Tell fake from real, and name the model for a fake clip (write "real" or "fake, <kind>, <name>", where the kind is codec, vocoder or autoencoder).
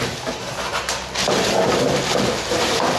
real